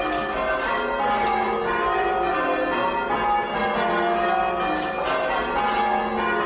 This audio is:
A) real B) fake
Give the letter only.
A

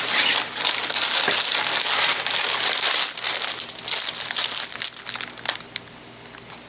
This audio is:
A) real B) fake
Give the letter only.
A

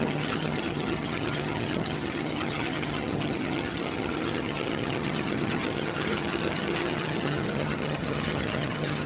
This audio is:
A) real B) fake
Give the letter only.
B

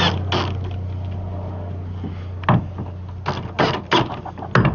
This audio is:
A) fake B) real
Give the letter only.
B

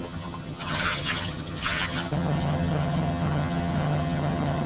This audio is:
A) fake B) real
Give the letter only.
A